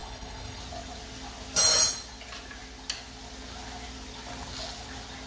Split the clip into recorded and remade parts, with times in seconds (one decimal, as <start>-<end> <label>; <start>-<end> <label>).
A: 0.0-0.6 remade; 0.6-5.3 recorded